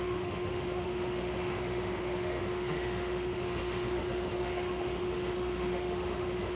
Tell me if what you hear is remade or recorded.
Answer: remade